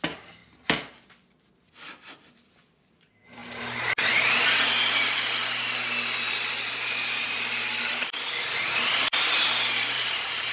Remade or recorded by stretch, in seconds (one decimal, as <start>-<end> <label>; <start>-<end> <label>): 0.0-0.4 remade; 0.4-1.5 recorded; 1.5-3.4 remade; 3.4-8.1 recorded; 8.1-10.5 remade